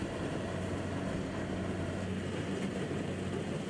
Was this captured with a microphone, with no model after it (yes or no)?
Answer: yes